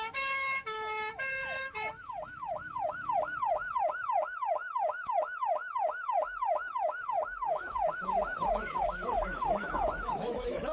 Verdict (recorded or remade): remade